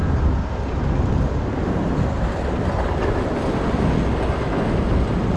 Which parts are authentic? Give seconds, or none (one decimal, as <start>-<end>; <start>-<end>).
0.0-5.4